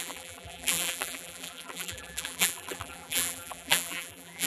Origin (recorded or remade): remade